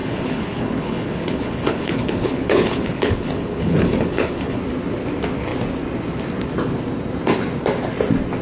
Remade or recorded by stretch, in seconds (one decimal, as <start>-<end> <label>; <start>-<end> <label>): 0.0-4.6 remade; 4.6-8.4 recorded